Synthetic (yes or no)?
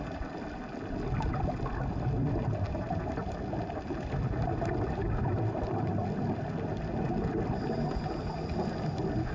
no